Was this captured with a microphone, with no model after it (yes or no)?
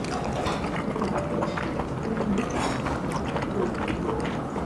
yes